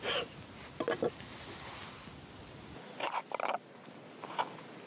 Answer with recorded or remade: recorded